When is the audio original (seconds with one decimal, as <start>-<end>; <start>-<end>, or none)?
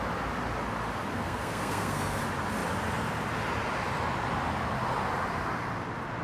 0.0-1.1; 2.2-6.2